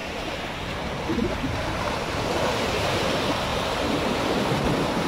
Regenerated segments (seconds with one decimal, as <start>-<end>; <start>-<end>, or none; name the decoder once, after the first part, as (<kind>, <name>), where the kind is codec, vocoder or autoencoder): 0.0-3.1 (vocoder, BigVGAN v2); 3.5-5.1

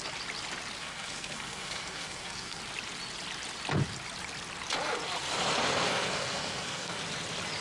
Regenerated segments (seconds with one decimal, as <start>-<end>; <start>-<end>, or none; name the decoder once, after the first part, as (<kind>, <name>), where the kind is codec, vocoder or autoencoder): 0.8-2.6 (codec, SNAC); 5.9-7.0

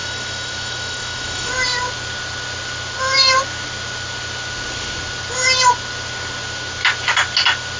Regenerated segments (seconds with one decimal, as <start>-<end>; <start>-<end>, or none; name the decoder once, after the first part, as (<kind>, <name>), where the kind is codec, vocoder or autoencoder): 0.0-1.5 (autoencoder, DAC-VAE)

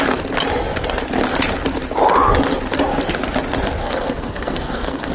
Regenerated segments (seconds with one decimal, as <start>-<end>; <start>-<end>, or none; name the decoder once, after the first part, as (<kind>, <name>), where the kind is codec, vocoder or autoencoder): 3.8-5.1 (codec, SNAC)

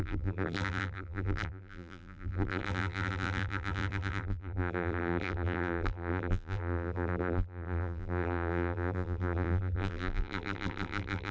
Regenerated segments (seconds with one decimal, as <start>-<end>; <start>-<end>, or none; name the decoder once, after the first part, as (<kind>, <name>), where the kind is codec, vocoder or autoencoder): 0.0-11.3 (vocoder, BigVGAN v2)

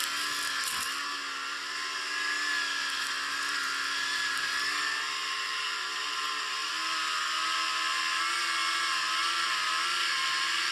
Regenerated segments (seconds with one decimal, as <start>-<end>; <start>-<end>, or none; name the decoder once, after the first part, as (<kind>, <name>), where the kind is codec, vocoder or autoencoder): 3.3-6.6 (vocoder, BigVGAN v2); 8.2-8.6; 9.4-10.7

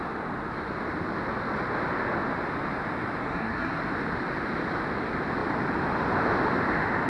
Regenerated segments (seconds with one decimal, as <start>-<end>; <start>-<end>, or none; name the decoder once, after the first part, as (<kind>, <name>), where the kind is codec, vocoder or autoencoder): 3.2-3.8 (codec, SNAC)